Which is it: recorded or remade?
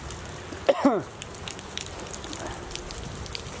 recorded